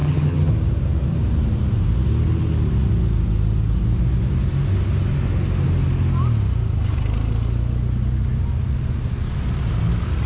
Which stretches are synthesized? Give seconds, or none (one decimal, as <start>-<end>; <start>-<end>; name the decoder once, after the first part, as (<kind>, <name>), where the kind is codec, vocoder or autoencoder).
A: 0.0-0.5 (vocoder, HiFi-GAN)